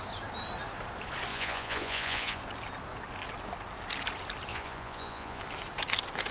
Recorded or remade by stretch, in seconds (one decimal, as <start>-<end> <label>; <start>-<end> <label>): 0.0-1.3 recorded; 1.3-2.4 remade; 2.4-4.5 recorded; 4.5-5.4 remade; 5.4-6.3 recorded